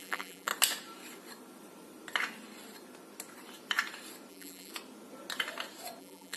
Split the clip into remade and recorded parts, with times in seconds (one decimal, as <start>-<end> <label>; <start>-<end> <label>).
0.0-0.5 remade; 0.5-4.3 recorded; 4.3-4.7 remade; 4.7-6.0 recorded; 6.0-6.4 remade